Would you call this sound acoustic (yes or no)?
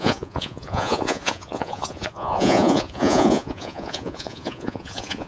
no